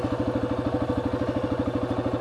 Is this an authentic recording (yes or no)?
yes